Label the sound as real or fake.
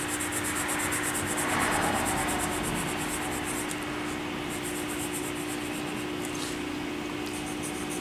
real